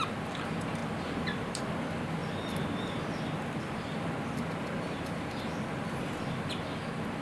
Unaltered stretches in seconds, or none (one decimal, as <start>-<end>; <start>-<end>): 0.0-0.8; 1.6-2.2; 6.5-7.2